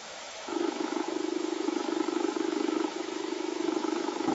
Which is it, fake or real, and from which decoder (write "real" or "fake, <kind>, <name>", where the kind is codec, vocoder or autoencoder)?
fake, autoencoder, DAC-VAE